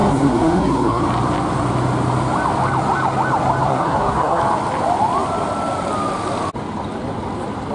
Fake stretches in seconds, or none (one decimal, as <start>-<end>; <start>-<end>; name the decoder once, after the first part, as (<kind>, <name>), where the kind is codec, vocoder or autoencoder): 0.0-1.0 (codec, SNAC); 3.7-4.4